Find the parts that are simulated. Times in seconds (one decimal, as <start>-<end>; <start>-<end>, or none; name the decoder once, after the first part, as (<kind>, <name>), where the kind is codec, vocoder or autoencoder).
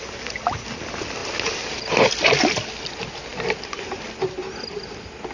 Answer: none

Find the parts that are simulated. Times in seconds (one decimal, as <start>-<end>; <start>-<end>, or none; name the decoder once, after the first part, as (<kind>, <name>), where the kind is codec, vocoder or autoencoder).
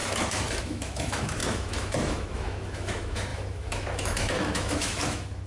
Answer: 0.0-5.5 (autoencoder, DAC-VAE)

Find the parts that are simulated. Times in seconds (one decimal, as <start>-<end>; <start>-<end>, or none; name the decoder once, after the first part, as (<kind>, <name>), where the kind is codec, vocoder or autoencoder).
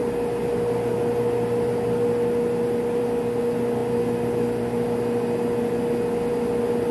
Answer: none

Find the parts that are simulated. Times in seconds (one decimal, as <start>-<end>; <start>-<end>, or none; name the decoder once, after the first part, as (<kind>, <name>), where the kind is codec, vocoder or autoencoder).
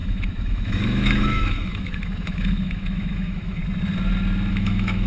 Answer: 0.0-3.6 (autoencoder, DAC-VAE); 4.5-5.1